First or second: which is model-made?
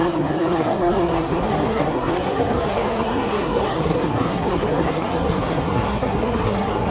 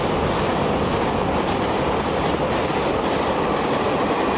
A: first